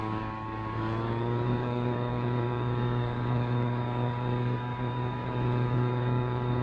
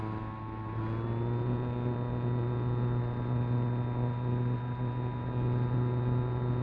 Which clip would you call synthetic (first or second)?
first